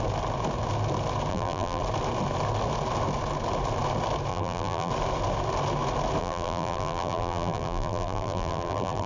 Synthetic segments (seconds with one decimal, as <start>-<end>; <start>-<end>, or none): 1.3-1.8; 4.3-4.9; 6.2-9.1

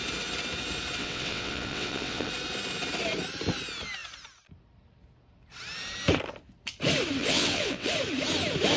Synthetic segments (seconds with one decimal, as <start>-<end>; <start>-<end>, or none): 1.0-2.3; 7.2-7.9

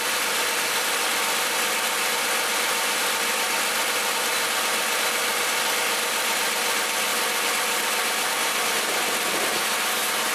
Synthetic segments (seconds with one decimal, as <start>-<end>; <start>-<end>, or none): none

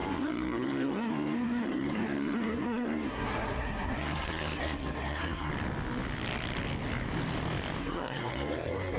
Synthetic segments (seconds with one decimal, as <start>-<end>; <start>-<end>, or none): 0.0-5.5; 7.8-9.0

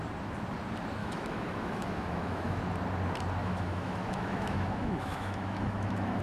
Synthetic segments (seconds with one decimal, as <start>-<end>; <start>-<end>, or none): 1.0-2.6; 3.4-6.2

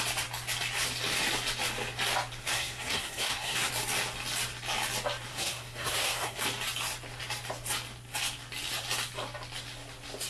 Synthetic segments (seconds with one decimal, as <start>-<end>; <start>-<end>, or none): 2.4-3.7; 5.3-6.4

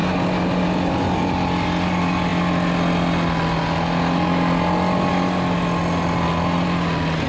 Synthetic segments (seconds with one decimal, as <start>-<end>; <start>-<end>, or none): none